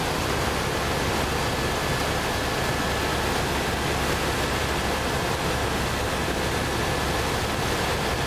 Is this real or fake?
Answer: real